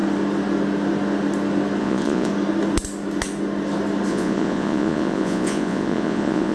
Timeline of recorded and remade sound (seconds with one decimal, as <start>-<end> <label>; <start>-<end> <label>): 0.0-1.8 recorded; 1.8-2.3 remade; 2.3-4.1 recorded; 4.1-6.5 remade